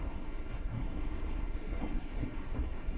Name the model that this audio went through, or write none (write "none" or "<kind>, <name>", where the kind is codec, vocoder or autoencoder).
codec, SNAC